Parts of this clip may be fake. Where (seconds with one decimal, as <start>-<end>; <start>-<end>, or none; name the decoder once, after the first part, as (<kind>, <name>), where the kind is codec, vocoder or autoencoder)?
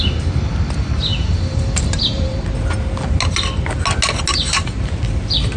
1.1-2.5 (vocoder, BigVGAN v2); 4.3-4.8